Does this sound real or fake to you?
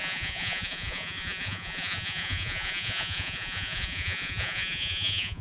fake